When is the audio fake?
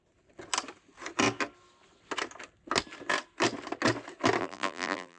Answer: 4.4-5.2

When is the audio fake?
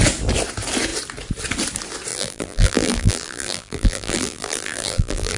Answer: 2.1-5.4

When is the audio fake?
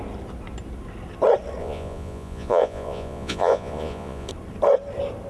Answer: 1.6-4.3